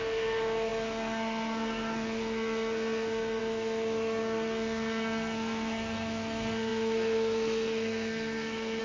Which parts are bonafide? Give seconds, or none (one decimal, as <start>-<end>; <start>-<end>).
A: none